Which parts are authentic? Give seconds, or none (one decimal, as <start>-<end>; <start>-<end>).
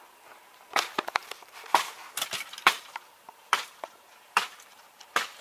none